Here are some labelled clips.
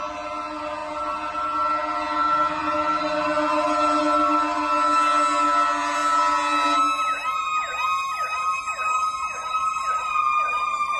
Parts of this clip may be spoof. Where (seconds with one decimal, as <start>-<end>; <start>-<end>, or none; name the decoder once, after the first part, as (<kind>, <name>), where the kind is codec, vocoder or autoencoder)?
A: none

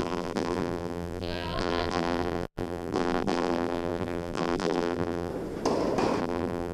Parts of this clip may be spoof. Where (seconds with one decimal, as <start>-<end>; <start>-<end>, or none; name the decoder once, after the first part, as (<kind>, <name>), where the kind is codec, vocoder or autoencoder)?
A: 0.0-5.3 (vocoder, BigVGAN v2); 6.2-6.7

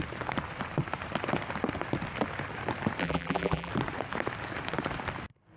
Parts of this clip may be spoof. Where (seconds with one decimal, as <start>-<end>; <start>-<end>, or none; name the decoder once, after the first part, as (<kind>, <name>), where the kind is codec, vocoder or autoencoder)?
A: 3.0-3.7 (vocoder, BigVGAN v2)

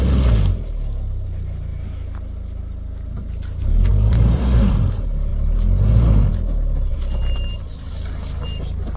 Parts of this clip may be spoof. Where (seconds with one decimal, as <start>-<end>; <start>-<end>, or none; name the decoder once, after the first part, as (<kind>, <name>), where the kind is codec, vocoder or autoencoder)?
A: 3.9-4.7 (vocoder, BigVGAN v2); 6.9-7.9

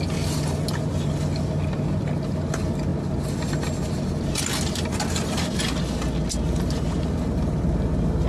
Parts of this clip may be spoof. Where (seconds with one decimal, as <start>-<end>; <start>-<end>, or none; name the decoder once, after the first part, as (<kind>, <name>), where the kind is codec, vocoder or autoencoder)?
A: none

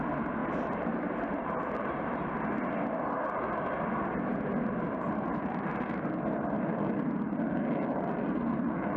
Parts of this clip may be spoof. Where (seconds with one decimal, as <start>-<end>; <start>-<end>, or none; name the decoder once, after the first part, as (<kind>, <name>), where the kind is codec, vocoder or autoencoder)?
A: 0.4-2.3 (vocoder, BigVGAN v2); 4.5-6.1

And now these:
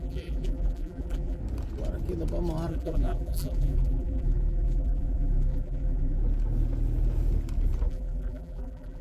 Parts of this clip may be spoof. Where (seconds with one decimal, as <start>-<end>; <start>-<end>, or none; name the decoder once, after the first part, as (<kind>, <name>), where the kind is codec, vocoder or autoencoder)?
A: 0.0-1.4 (vocoder, BigVGAN v2); 2.7-6.2; 7.9-9.0

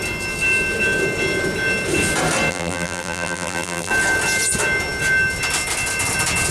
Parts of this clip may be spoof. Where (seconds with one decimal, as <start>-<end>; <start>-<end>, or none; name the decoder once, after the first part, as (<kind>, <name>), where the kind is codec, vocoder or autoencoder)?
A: 2.5-3.9 (vocoder, BigVGAN v2)